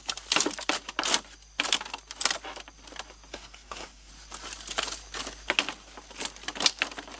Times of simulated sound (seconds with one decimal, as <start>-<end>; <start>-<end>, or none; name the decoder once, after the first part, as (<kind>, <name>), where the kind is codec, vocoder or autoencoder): 3.3-4.1 (codec, SNAC)